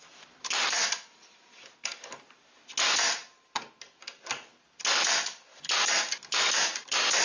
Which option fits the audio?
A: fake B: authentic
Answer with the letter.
B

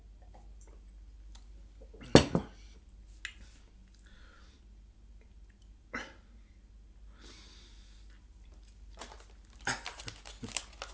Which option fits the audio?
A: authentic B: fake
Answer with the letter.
A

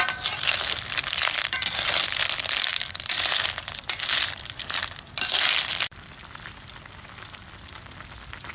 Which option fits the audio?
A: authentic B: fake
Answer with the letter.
A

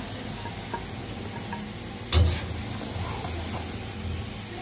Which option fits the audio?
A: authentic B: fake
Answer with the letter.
A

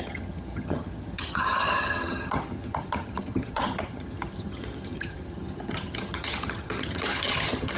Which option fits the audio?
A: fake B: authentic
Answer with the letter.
A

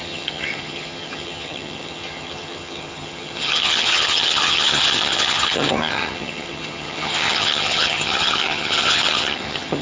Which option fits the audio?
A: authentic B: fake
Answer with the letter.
B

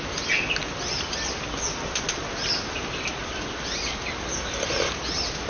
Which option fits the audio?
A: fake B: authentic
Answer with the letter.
B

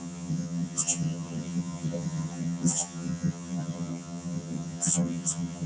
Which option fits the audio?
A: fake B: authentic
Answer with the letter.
A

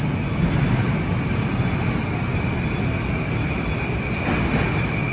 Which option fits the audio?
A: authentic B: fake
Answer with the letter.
A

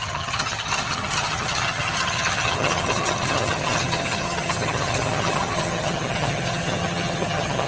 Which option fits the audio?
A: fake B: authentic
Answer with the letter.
A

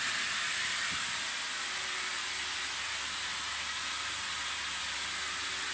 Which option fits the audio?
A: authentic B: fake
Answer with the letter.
A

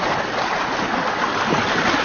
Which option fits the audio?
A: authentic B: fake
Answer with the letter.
A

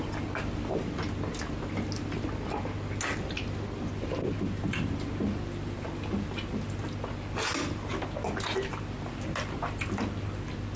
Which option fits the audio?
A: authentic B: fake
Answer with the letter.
A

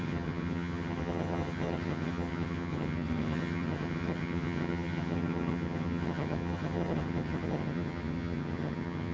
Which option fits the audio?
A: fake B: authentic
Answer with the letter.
A